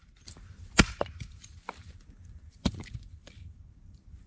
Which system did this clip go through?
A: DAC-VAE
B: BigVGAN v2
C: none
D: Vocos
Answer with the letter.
B